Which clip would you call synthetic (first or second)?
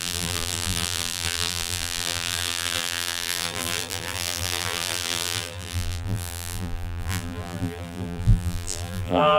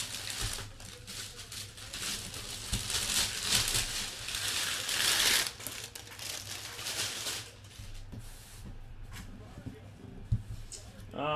first